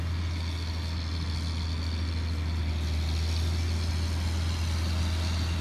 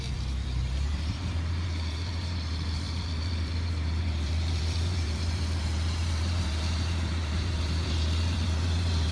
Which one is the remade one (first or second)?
second